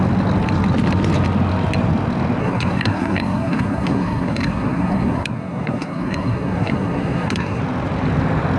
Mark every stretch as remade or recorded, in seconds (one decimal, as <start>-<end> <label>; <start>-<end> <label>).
0.0-2.4 recorded; 2.4-7.6 remade; 7.6-8.6 recorded